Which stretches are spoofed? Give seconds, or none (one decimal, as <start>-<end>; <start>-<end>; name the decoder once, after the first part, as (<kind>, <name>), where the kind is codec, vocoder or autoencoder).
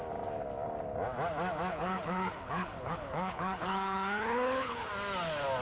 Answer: 1.7-4.9 (codec, HILCodec)